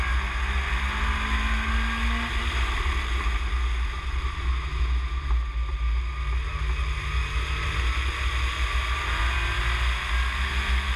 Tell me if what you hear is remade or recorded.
recorded